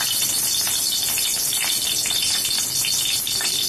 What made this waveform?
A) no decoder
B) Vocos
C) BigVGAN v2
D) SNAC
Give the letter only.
A